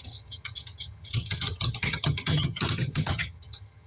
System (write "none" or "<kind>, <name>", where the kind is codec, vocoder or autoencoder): vocoder, HiFi-GAN